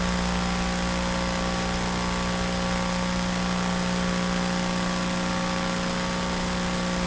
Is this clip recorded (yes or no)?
yes